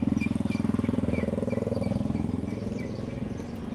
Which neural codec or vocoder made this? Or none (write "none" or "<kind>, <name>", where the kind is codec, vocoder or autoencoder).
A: vocoder, BigVGAN v2